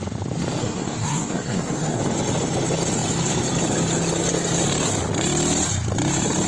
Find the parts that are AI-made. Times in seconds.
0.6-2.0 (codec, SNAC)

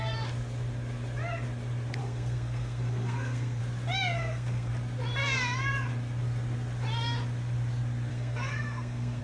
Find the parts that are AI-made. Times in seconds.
2.0-3.6 (codec, SNAC); 4.2-4.7; 8.1-9.2

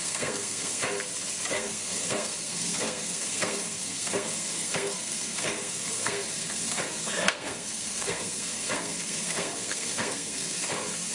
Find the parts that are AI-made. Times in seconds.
0.0-0.8 (codec, SNAC); 1.5-11.1

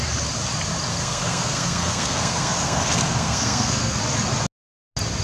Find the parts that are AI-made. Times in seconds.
0.9-4.0 (codec, SNAC)